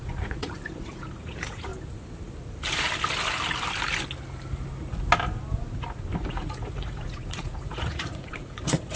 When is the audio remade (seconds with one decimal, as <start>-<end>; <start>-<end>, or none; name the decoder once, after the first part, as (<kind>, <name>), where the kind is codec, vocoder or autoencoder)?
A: 0.0-1.7 (vocoder, Vocos); 6.3-9.0